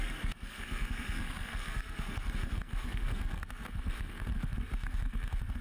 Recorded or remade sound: remade